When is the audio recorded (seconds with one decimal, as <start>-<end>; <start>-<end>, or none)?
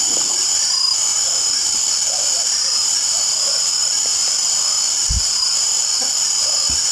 0.0-1.1; 1.8-6.9